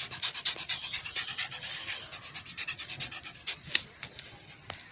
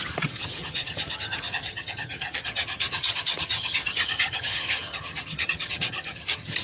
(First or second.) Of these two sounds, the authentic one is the first